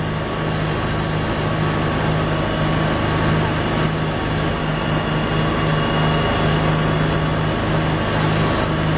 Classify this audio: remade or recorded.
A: recorded